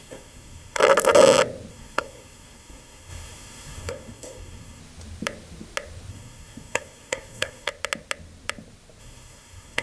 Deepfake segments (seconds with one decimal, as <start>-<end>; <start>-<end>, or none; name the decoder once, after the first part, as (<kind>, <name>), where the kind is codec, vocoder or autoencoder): 0.0-0.8 (codec, SNAC); 1.7-4.8; 6.1-7.7; 9.0-9.8